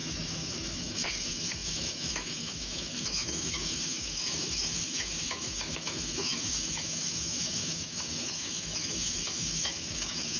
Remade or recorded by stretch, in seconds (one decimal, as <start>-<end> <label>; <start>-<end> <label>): 0.0-10.4 remade